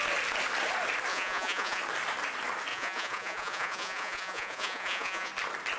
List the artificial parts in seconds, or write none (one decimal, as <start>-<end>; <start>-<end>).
1.1-1.8; 2.7-5.3